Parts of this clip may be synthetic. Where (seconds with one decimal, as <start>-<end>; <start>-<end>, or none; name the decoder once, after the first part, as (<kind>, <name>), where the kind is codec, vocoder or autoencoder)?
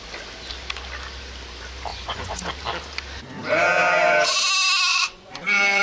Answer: 1.9-2.5 (vocoder, Vocos); 4.9-5.8